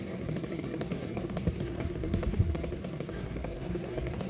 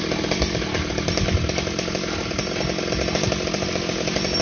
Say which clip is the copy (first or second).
first